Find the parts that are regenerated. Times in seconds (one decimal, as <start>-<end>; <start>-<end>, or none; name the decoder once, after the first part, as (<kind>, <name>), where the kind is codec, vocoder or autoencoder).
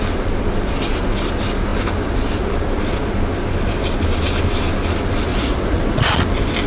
5.3-6.1 (vocoder, Vocos)